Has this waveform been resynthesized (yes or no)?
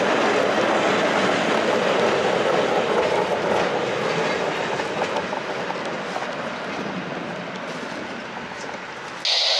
no